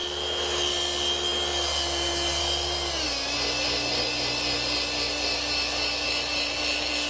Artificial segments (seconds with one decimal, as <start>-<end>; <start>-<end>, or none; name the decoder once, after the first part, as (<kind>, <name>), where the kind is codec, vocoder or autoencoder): none